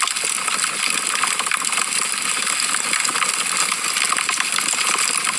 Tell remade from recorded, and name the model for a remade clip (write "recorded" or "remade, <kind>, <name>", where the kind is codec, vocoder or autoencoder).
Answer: recorded